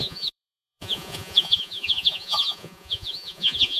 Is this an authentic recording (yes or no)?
no